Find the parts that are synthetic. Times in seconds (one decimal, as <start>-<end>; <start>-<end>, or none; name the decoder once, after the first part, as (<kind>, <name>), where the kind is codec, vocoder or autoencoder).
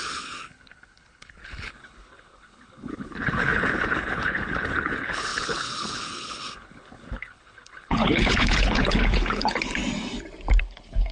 0.0-9.8 (codec, HILCodec); 10.6-11.1